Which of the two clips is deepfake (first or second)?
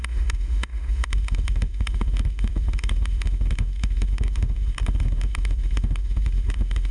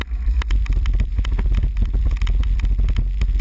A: first